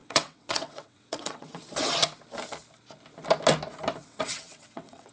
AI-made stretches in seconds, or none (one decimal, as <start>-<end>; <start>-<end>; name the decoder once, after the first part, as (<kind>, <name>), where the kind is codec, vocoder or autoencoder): 0.0-1.6 (vocoder, WaveNeXt); 4.0-5.1